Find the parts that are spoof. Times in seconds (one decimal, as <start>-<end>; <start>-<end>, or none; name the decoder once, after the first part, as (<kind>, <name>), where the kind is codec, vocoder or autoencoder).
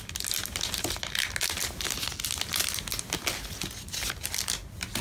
none